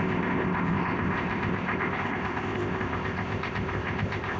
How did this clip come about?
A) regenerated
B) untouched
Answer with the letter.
A